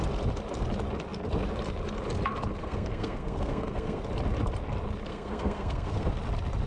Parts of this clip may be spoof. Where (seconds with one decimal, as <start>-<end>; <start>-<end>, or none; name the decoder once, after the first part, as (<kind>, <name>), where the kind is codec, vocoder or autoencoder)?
2.6-4.0 (codec, SNAC); 5.1-6.1